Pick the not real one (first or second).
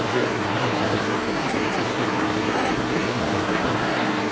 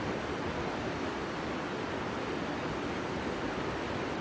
first